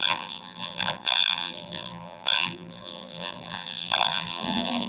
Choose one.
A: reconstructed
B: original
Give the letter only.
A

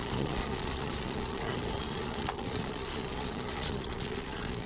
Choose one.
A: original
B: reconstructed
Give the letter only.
B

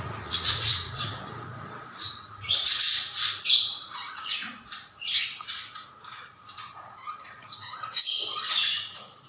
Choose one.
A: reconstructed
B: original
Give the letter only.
A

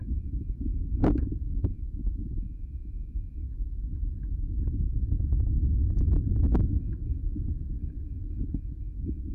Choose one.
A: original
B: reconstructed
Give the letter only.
B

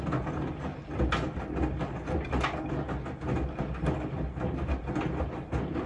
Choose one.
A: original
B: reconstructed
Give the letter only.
A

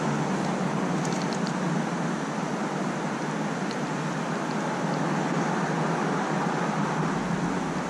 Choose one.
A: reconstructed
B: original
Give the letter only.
B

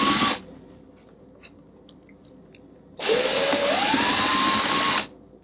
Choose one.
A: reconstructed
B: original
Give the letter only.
B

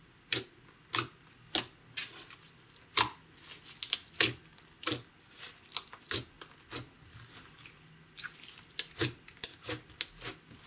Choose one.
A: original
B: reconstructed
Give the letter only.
A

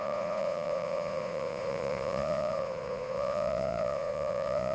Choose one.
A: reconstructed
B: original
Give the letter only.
A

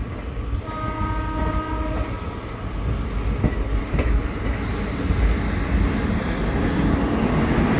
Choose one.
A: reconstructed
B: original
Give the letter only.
B